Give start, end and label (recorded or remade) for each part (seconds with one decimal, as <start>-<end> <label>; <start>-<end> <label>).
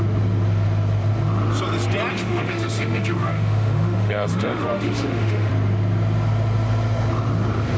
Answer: 0.0-2.1 recorded; 2.1-5.5 remade; 5.5-7.8 recorded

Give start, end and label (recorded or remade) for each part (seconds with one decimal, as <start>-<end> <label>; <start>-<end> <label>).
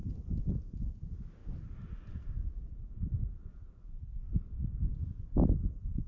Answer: 0.0-0.5 remade; 0.5-1.4 recorded; 1.4-4.0 remade; 4.0-6.1 recorded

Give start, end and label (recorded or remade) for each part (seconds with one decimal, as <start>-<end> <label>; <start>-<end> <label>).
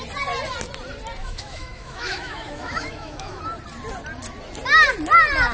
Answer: 0.0-1.2 recorded; 1.2-3.4 remade; 3.4-5.5 recorded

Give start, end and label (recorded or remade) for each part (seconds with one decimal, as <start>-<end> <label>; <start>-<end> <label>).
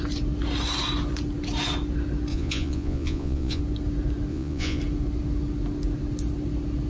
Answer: 0.0-2.3 recorded; 2.3-3.6 remade; 3.6-4.3 recorded; 4.3-4.8 remade; 4.8-6.9 recorded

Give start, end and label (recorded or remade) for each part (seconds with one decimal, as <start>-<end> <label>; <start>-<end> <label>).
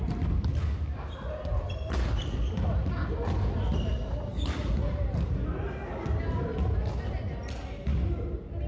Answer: 0.0-8.7 recorded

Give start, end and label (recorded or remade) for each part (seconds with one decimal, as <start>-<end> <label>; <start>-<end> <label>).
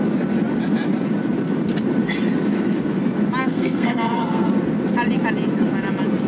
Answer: 0.0-3.4 recorded; 3.4-4.5 remade; 4.5-6.3 recorded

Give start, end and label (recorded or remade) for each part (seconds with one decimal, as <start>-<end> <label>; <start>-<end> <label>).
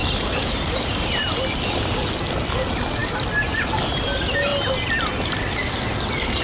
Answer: 0.0-1.3 remade; 1.3-6.4 recorded